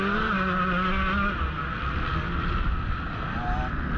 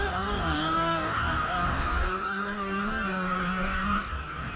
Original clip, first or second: first